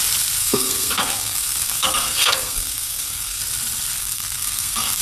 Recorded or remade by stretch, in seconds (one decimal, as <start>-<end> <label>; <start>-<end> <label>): 0.0-0.4 recorded; 0.4-3.4 remade; 3.4-4.0 recorded; 4.0-5.0 remade